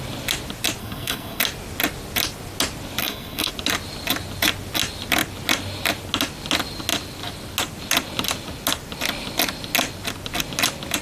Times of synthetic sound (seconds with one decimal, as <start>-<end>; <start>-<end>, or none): 0.8-1.4; 3.0-3.5